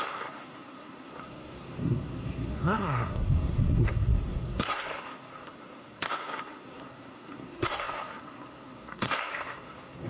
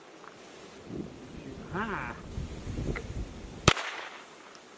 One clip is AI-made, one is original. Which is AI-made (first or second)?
first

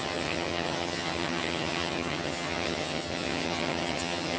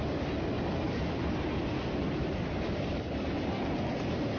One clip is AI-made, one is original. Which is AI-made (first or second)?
first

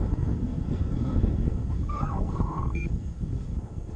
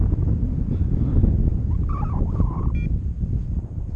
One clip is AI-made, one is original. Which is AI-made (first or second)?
first